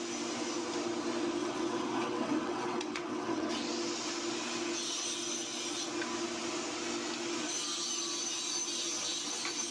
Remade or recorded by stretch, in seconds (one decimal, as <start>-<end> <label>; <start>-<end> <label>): 0.0-1.4 recorded; 1.4-3.6 remade; 3.6-9.7 recorded